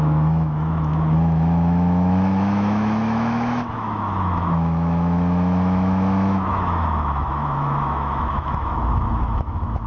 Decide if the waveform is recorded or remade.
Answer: remade